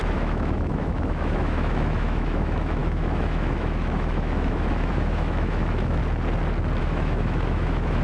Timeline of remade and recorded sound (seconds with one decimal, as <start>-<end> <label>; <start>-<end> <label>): 0.0-6.0 remade; 6.0-6.8 recorded; 6.8-8.0 remade